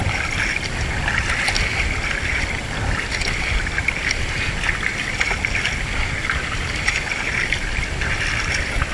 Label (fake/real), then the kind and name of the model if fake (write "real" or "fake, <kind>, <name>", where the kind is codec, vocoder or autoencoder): real